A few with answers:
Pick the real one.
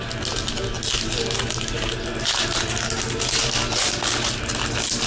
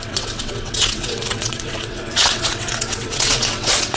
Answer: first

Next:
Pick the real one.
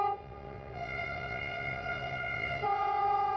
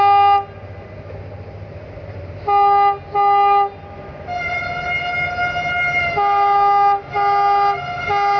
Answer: second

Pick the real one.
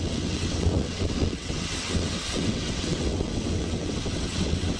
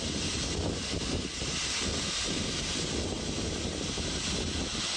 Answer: second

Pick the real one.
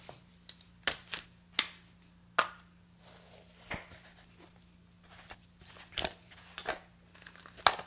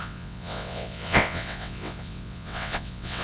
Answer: first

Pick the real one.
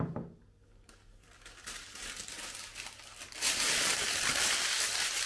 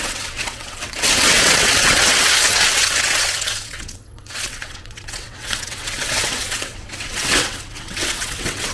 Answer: first